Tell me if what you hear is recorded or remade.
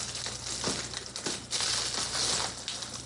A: recorded